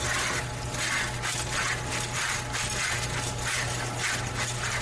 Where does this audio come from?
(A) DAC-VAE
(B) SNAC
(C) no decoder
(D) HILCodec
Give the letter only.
C